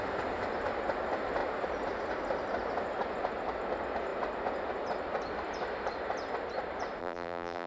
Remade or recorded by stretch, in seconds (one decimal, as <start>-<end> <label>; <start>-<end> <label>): 0.0-7.0 recorded; 7.0-7.7 remade